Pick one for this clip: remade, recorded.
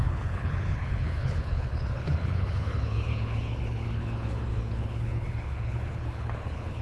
remade